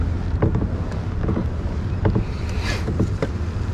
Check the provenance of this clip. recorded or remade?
recorded